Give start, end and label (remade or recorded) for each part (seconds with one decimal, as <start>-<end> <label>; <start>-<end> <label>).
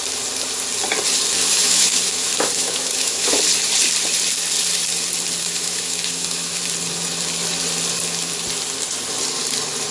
0.0-1.5 recorded; 1.5-3.4 remade; 3.4-5.4 recorded; 5.4-6.6 remade; 6.6-9.9 recorded